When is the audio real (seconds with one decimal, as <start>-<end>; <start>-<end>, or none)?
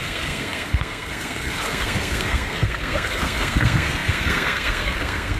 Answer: none